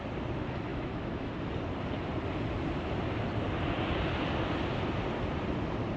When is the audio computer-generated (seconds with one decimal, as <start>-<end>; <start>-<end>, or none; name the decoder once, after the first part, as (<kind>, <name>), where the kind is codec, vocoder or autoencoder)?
0.7-1.3 (autoencoder, DAC-VAE)